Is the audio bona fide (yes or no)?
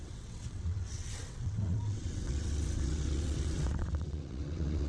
no